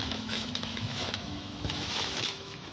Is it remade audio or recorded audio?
remade